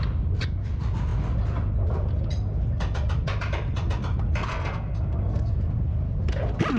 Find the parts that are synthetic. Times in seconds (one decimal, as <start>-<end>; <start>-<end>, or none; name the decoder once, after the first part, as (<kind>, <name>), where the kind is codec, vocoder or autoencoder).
4.5-5.6 (codec, SNAC)